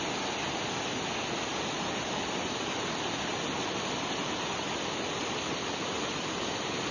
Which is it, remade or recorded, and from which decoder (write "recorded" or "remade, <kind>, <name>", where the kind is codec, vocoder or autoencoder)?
recorded